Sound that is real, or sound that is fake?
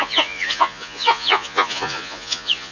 fake